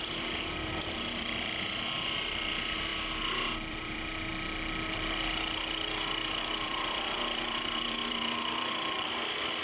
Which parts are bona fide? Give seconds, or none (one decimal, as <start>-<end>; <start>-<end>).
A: 2.9-3.7; 4.3-6.4